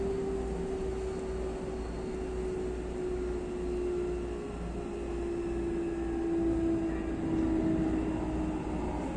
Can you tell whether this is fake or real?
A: real